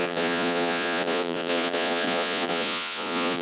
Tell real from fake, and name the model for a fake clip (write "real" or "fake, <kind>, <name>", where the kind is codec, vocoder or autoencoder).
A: fake, vocoder, Vocos